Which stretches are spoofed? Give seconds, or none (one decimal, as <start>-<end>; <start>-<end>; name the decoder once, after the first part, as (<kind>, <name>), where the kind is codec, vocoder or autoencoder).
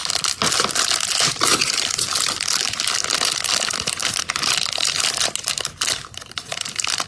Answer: none